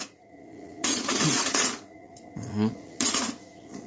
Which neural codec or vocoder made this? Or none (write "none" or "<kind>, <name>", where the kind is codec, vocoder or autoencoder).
vocoder, Vocos